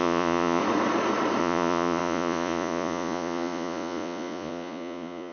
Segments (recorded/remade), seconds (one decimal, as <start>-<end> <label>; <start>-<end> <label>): 0.0-0.6 remade; 0.6-1.4 recorded; 1.4-5.3 remade